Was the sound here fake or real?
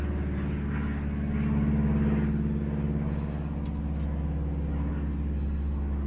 real